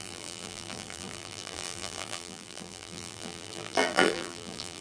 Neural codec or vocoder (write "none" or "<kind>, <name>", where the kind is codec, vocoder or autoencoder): vocoder, BigVGAN v2